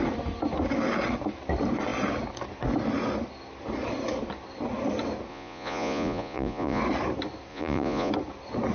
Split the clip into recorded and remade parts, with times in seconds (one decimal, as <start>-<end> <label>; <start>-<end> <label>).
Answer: 0.0-5.3 recorded; 5.3-6.8 remade; 6.8-7.5 recorded; 7.5-8.1 remade; 8.1-8.7 recorded